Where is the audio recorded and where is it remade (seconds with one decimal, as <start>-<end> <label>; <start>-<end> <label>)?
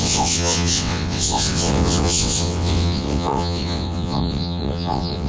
0.0-5.3 remade